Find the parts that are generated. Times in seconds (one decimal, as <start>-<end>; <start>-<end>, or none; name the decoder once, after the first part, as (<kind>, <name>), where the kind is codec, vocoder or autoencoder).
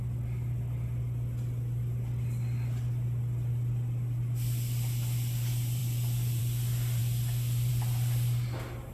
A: none